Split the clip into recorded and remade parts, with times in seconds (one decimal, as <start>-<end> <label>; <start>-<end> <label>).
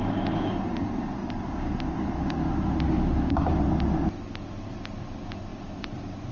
0.0-6.3 recorded